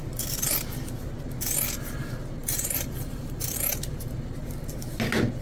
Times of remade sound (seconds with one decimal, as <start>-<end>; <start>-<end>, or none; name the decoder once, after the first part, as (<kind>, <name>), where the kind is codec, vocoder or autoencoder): 2.4-3.7 (vocoder, BigVGAN v2)